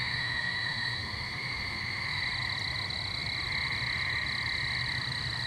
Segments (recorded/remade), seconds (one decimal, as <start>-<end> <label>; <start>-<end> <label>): 0.0-2.2 remade; 2.2-5.5 recorded